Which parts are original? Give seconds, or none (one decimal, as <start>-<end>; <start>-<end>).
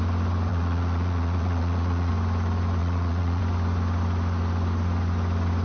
0.0-0.5; 2.1-2.8; 3.4-5.6